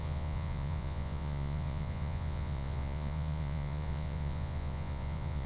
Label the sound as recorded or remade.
remade